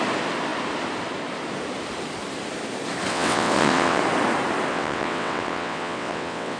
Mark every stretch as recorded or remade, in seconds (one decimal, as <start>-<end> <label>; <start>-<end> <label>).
0.0-3.1 recorded; 3.1-4.0 remade; 4.0-4.7 recorded; 4.7-6.6 remade